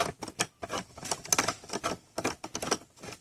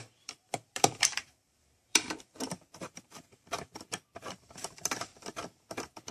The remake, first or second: second